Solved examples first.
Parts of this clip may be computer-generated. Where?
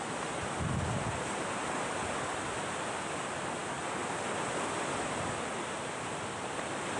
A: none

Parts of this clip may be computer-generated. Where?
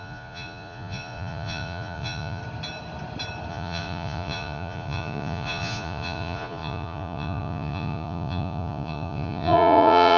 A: 0.0-2.4 (vocoder, Vocos); 3.5-10.2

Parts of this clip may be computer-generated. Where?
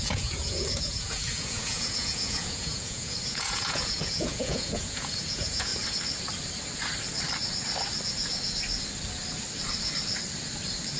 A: 0.0-5.7 (vocoder, Vocos)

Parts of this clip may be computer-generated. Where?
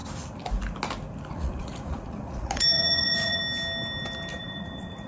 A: 1.3-3.4 (vocoder, Vocos); 4.3-5.1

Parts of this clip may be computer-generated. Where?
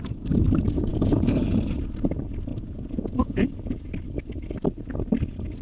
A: 0.9-1.6 (vocoder, Vocos); 2.5-3.5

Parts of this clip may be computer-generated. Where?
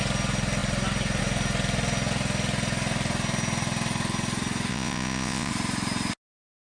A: 4.7-5.5 (vocoder, Vocos)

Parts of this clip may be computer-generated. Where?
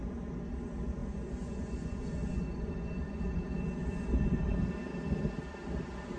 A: 1.0-4.4 (vocoder, Vocos)